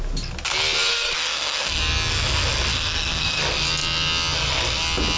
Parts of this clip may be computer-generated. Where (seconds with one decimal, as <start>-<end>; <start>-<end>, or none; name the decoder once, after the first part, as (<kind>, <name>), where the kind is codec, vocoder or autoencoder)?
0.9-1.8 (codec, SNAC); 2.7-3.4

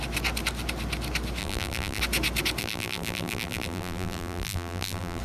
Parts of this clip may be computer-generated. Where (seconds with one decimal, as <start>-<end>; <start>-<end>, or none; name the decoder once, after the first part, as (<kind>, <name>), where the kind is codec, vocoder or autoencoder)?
1.4-2.0 (vocoder, BigVGAN v2); 2.6-5.2

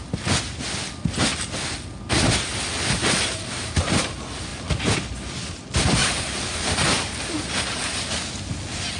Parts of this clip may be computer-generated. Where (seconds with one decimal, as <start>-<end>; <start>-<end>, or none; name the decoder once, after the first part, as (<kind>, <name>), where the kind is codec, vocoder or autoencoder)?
3.0-4.1 (vocoder, BigVGAN v2); 6.0-6.9

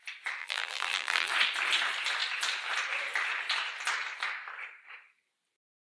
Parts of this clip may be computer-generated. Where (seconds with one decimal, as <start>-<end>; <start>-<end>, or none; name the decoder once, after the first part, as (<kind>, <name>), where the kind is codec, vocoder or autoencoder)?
0.4-1.3 (vocoder, BigVGAN v2)